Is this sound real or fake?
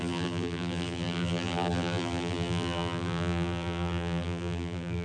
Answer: fake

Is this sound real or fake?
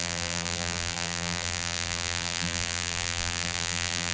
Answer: fake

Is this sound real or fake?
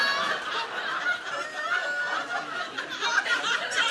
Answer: real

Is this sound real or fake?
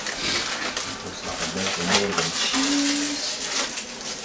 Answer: real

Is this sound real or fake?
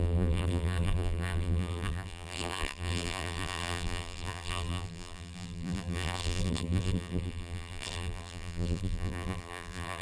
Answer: fake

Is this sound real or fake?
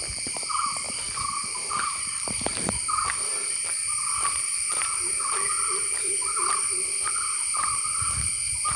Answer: fake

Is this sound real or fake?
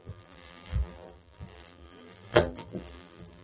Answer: fake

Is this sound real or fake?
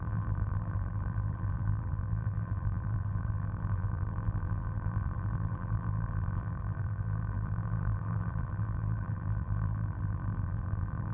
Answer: fake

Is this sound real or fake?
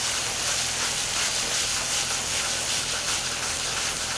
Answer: real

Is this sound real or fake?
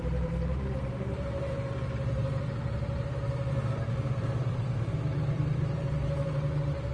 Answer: fake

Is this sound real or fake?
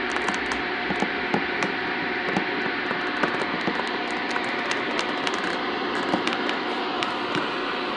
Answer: fake